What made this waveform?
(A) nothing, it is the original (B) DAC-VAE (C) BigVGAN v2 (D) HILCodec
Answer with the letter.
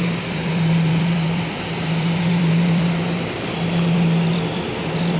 C